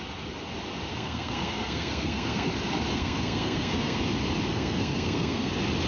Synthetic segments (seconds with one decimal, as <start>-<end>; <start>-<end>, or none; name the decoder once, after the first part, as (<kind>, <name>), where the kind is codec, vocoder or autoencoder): 0.9-2.5 (codec, SNAC); 2.9-4.0; 4.5-5.5